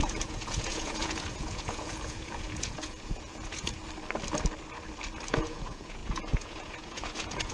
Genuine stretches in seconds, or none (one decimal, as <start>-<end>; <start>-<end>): 3.8-5.3